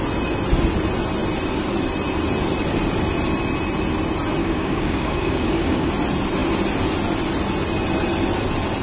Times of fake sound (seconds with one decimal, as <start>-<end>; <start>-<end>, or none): 4.4-5.9